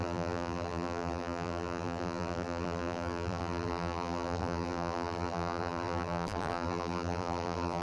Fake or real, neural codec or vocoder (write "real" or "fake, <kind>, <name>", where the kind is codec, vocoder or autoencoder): fake, vocoder, BigVGAN v2